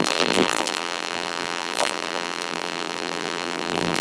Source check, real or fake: fake